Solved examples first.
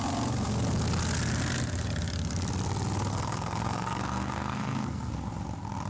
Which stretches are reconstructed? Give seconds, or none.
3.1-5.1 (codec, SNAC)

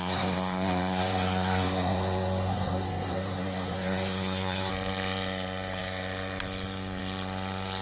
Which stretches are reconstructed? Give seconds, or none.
0.0-4.7 (codec, SNAC)

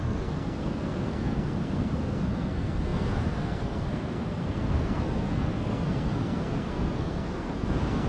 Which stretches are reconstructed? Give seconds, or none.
0.0-8.1 (codec, SNAC)

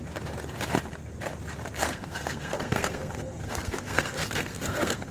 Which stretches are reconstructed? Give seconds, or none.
1.8-5.1 (codec, SNAC)

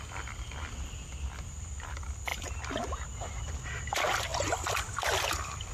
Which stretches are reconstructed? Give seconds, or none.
none